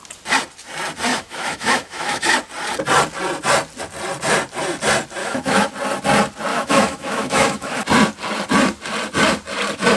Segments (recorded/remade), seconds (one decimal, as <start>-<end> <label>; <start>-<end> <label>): 0.0-1.1 recorded; 1.1-2.3 remade; 2.3-5.2 recorded; 5.2-5.7 remade; 5.7-6.5 recorded; 6.5-7.8 remade; 7.8-10.0 recorded